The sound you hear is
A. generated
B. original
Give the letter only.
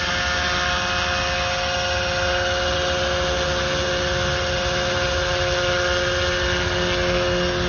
B